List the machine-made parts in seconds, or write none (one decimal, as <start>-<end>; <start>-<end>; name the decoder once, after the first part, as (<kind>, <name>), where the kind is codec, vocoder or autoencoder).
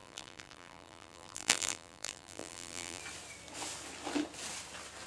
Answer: 0.0-3.0 (vocoder, BigVGAN v2)